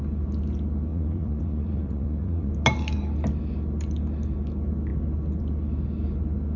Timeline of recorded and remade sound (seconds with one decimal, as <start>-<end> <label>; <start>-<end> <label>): 0.0-0.9 recorded; 0.9-2.5 remade; 2.5-6.6 recorded